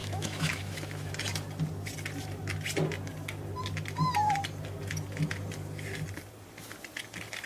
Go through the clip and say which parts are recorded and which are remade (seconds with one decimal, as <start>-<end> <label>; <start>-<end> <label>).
0.0-1.1 remade; 1.1-7.5 recorded